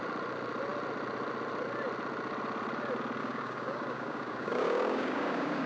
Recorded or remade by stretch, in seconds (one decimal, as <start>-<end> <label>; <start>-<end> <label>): 0.0-3.2 recorded; 3.2-5.7 remade